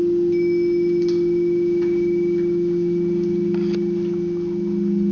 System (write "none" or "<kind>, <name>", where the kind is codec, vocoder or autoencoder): none